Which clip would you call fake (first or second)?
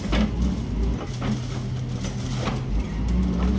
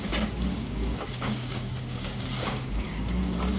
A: second